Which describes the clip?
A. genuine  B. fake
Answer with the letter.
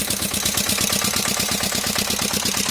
B